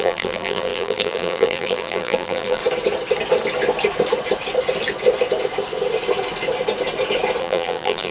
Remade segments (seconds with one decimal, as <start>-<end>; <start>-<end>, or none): 0.0-2.6; 7.4-8.1